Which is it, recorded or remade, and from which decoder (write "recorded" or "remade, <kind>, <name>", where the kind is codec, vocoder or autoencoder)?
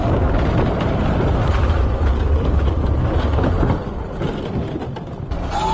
recorded